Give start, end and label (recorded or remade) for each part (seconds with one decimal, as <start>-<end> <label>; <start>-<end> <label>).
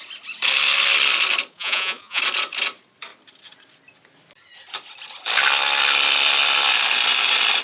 0.0-1.5 recorded; 1.5-2.2 remade; 2.2-7.6 recorded